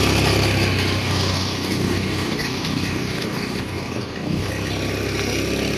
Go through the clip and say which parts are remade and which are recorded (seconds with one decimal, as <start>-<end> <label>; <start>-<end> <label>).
0.0-1.0 recorded; 1.0-4.5 remade; 4.5-5.8 recorded